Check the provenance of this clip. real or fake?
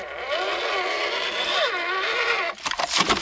real